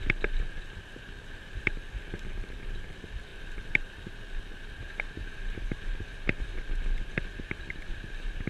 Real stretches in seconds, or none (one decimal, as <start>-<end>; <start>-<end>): 0.0-8.5